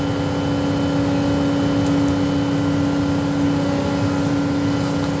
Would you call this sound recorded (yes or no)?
yes